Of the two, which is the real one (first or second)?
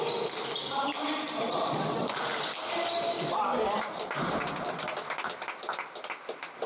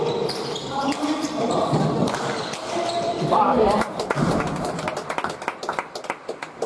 first